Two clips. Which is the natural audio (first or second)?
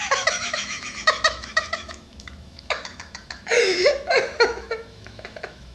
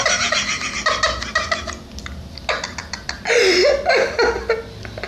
second